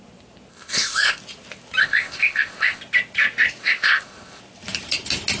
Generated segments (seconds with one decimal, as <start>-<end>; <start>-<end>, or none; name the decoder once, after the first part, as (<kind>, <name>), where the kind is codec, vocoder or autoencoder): 0.5-1.2 (codec, ZipCodec); 1.8-2.8; 3.6-4.4

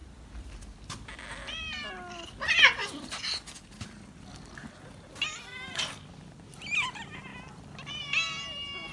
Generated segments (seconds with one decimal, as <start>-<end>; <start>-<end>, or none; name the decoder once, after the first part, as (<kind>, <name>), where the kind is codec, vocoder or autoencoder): none

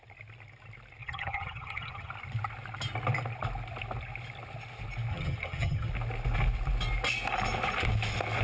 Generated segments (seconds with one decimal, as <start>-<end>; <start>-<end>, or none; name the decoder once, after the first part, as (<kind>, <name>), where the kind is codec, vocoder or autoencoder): 1.0-2.1 (vocoder, HiFi-GAN); 5.1-5.9

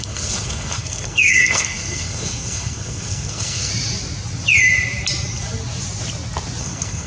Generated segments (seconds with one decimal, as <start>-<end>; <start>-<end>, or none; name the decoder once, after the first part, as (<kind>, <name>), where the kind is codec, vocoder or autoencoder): 0.0-3.7 (codec, SNAC); 6.6-7.1